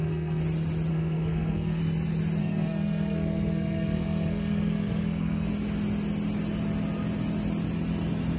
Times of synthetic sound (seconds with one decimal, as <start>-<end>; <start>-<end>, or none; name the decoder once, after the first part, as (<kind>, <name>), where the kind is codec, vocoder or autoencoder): 0.0-0.4 (codec, SNAC); 0.9-1.8; 2.4-5.5